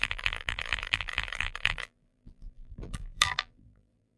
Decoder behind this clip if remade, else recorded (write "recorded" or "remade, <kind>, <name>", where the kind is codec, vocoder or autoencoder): remade, vocoder, BigVGAN v2